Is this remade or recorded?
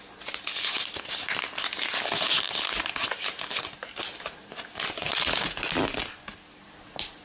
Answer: recorded